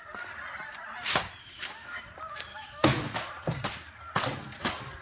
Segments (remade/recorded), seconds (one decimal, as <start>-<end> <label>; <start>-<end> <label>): 0.0-1.4 recorded; 1.4-2.0 remade; 2.0-2.5 recorded; 2.5-3.3 remade; 3.3-5.0 recorded